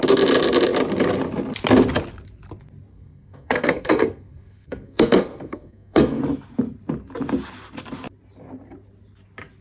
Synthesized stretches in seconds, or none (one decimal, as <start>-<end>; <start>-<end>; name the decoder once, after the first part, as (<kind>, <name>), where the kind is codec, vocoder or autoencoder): 2.9-6.2 (codec, SNAC)